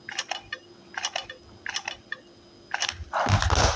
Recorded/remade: recorded